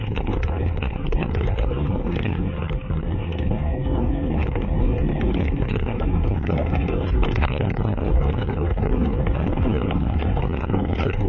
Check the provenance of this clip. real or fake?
fake